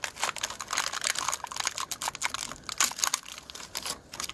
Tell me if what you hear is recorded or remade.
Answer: recorded